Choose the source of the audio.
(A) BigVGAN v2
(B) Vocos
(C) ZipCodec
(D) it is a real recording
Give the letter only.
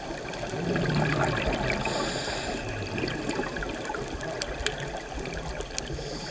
D